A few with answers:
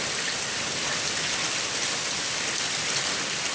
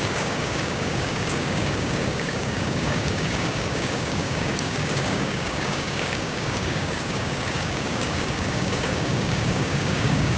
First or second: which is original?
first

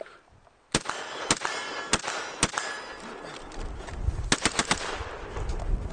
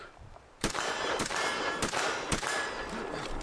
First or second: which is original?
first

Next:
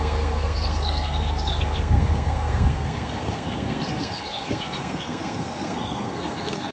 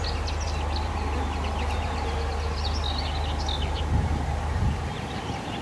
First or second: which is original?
second